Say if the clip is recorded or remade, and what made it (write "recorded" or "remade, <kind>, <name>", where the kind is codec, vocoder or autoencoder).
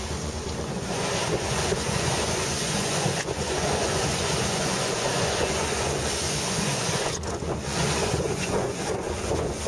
remade, vocoder, Vocos